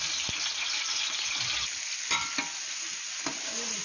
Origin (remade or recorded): recorded